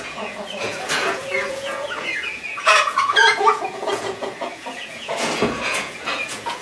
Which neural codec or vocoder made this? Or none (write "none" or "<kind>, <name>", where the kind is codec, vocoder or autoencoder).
vocoder, Vocos